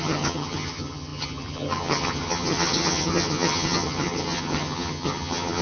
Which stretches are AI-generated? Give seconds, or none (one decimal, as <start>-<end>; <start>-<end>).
0.0-5.6